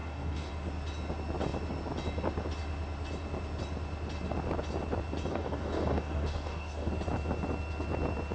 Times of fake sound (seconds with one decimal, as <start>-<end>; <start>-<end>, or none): 0.0-0.5; 5.3-6.9